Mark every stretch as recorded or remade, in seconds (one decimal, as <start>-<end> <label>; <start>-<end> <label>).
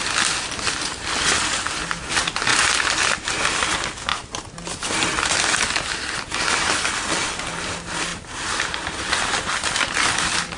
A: 0.0-10.6 recorded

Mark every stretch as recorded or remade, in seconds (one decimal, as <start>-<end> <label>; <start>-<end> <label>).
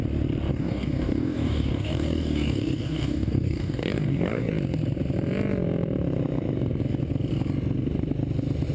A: 0.0-0.5 recorded; 0.5-4.5 remade; 4.5-8.7 recorded